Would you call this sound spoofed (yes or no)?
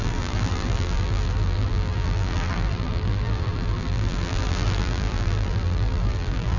yes